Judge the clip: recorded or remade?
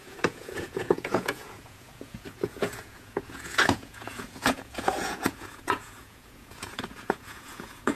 remade